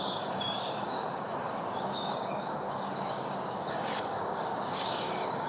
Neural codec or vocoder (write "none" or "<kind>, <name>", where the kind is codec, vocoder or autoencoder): codec, DAC